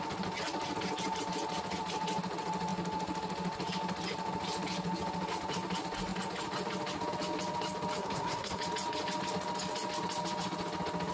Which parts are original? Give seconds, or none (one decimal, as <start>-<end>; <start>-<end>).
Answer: 0.0-8.0; 8.6-11.1